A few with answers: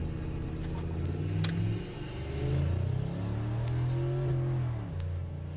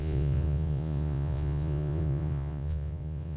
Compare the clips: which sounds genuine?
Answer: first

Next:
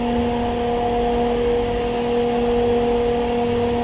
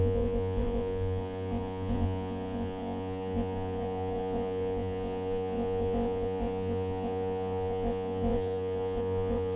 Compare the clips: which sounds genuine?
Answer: first